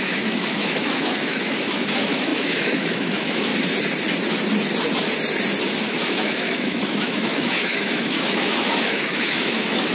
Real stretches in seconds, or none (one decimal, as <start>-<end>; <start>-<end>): 3.5-5.8